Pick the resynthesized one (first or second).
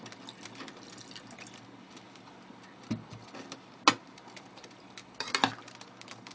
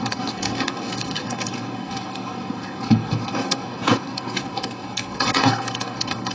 second